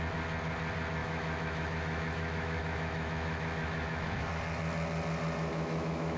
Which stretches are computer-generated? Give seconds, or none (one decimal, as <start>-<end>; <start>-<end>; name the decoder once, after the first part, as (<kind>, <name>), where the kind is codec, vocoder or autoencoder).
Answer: 1.0-4.3 (autoencoder, DAC-VAE); 5.5-6.2